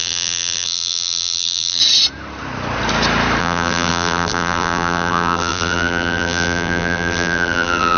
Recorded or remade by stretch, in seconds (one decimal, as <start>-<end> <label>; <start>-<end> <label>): 0.0-1.8 remade; 1.8-3.4 recorded; 3.4-8.0 remade